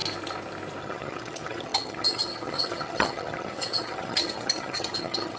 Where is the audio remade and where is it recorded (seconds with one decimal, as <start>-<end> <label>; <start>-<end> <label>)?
0.0-0.8 recorded; 0.8-5.4 remade